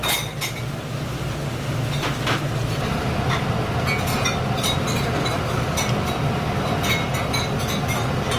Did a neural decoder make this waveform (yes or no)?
no